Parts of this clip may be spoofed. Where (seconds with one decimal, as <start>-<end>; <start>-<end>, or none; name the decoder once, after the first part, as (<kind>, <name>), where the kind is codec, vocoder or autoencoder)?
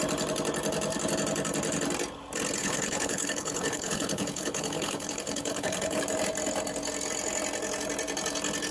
2.6-6.0 (codec, HILCodec)